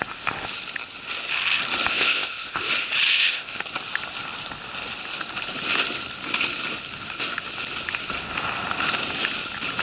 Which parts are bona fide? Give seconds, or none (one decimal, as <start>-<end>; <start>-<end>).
0.0-1.9; 2.7-3.1; 3.6-9.8

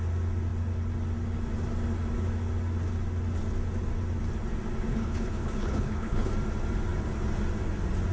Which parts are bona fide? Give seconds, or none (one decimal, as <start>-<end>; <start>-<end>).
0.0-4.9; 6.3-8.1

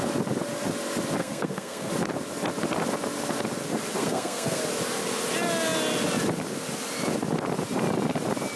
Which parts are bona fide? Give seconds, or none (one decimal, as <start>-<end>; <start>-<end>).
0.0-1.2; 1.9-4.0; 4.6-8.6

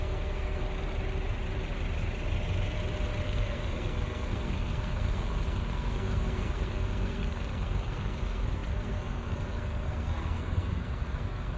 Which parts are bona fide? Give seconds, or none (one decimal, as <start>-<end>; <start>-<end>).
0.6-3.2

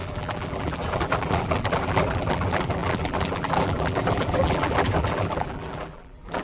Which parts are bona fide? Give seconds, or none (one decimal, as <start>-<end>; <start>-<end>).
none

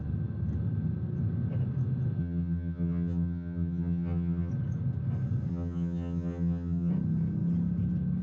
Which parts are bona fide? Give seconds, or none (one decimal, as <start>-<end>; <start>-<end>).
0.0-2.2; 4.5-5.5; 6.9-8.2

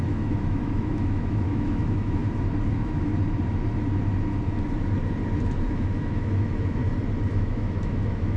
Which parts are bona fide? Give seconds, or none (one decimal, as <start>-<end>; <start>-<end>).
2.2-2.7; 3.1-5.7; 6.8-7.3